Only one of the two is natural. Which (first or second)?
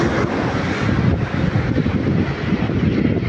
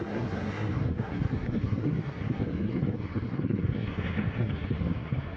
first